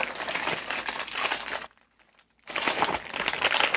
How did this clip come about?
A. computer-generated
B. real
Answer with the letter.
B